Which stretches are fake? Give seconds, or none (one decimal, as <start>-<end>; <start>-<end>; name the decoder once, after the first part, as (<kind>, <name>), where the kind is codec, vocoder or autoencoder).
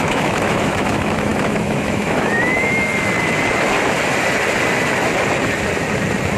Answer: 0.0-2.9 (autoencoder, DAC-VAE)